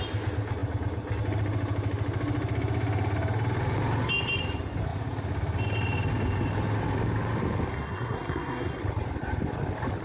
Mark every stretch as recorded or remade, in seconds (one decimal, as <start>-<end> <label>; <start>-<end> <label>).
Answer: 0.0-7.7 recorded; 7.7-8.8 remade; 8.8-10.0 recorded